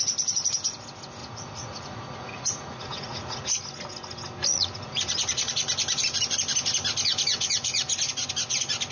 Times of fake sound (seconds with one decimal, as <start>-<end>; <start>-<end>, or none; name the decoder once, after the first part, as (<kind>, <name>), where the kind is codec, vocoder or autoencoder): 1.2-3.6 (vocoder, Vocos); 4.5-5.5